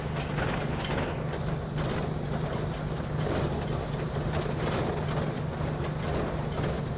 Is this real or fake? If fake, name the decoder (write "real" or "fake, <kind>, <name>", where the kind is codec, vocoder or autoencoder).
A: real